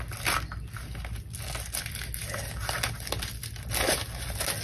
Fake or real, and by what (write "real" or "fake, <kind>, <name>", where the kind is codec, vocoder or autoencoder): real